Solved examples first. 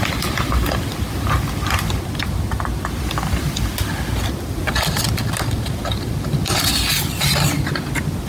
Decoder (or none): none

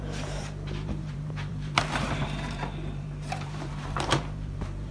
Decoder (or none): vocoder, BigVGAN v2